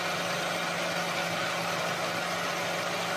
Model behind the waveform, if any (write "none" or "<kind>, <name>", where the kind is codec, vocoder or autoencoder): none